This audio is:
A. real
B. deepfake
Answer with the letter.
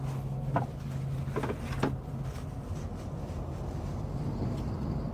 A